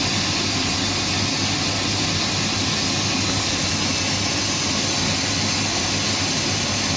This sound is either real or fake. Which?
real